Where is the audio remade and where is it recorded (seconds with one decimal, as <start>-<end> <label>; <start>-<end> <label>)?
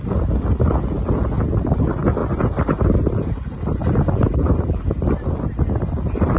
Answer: 0.0-6.4 recorded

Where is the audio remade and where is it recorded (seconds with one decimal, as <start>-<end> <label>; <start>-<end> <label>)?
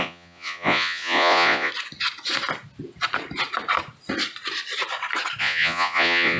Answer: 0.0-1.7 remade; 1.7-5.4 recorded; 5.4-6.4 remade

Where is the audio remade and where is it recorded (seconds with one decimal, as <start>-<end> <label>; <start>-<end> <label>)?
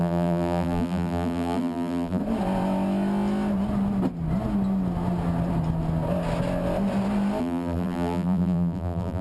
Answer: 0.0-2.2 remade; 2.2-7.4 recorded; 7.4-9.2 remade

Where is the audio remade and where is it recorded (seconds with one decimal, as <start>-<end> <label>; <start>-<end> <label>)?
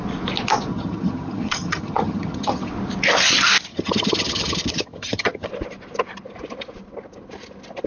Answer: 0.0-0.7 recorded; 0.7-2.7 remade; 2.7-3.7 recorded; 3.7-5.5 remade; 5.5-7.9 recorded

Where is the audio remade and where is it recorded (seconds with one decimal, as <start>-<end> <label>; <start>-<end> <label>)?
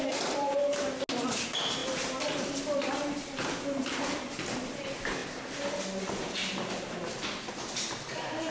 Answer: 0.0-8.5 recorded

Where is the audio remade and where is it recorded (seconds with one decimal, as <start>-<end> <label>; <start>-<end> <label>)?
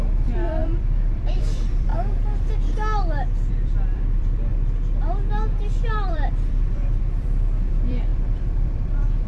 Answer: 0.0-1.9 remade; 1.9-3.5 recorded; 3.5-4.5 remade; 4.5-6.1 recorded; 6.1-9.3 remade